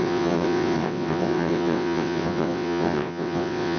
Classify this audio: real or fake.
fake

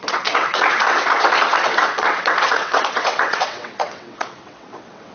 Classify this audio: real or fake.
fake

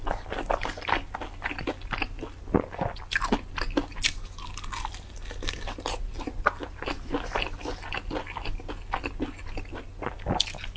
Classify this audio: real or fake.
real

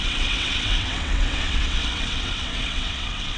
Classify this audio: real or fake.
fake